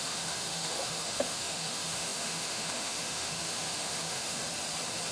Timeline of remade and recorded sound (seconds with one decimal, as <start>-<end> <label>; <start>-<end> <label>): 0.0-4.4 remade; 4.4-5.1 recorded